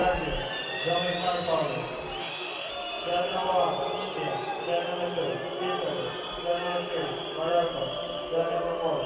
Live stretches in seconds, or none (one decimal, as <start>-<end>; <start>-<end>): 0.0-2.2; 2.7-9.1